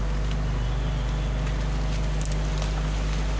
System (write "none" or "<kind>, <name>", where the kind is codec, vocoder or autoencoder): none